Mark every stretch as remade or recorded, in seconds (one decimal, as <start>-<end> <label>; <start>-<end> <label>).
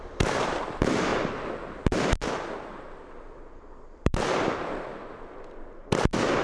0.0-1.1 remade; 1.1-4.0 recorded; 4.0-4.9 remade; 4.9-6.4 recorded